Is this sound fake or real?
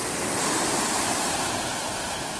real